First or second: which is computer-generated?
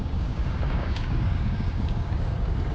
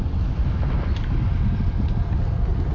first